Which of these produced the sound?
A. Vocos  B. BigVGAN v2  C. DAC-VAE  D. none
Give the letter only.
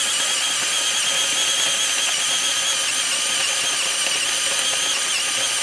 D